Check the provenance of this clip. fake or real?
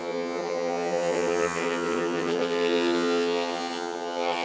fake